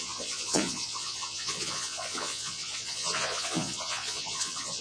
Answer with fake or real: fake